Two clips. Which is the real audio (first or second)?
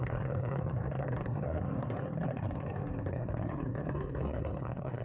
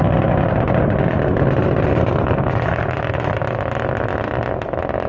second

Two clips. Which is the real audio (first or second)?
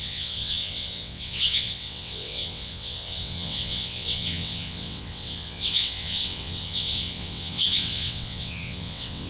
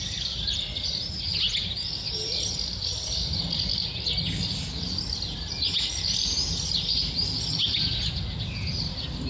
second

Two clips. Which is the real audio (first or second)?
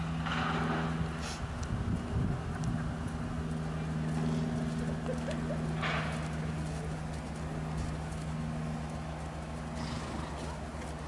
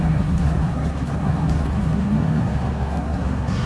first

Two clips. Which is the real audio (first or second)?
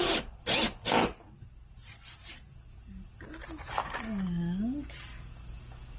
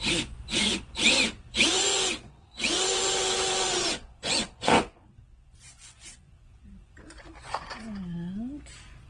first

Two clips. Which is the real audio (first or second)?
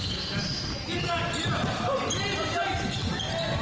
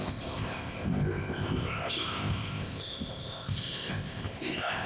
first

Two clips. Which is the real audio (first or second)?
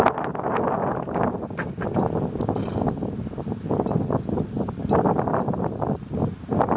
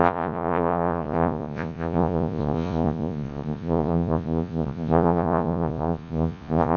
first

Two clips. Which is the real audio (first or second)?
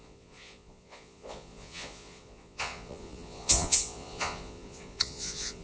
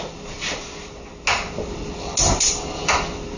second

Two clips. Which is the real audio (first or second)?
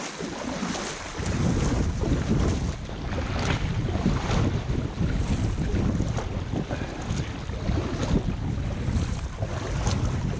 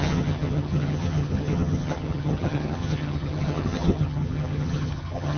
first